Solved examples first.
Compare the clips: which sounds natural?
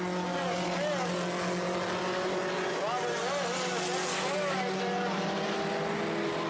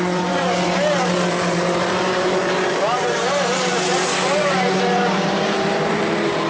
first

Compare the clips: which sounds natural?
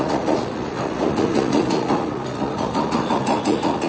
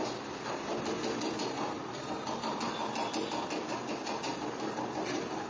second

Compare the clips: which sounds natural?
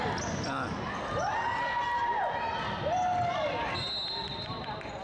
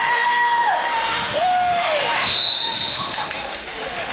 first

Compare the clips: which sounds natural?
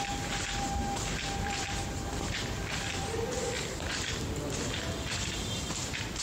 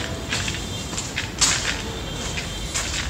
second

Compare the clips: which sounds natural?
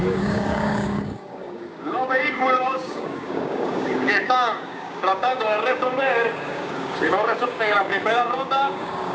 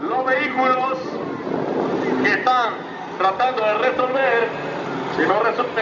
second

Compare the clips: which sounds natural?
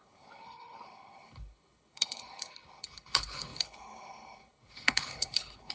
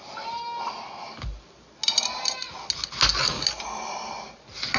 second